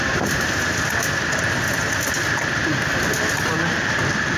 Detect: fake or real real